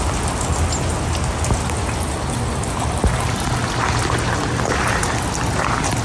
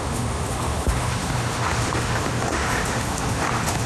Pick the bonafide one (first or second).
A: first